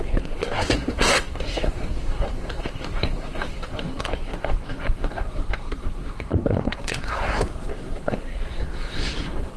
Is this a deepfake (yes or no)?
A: yes